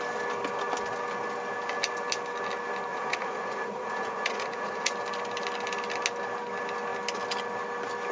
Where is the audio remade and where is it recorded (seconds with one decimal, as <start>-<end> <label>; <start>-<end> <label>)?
0.0-2.9 recorded; 2.9-4.9 remade; 4.9-8.1 recorded